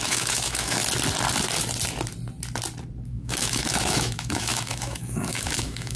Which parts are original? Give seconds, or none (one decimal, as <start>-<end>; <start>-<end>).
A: 0.8-3.1